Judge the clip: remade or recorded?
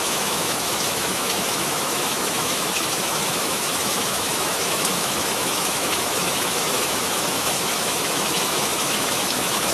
remade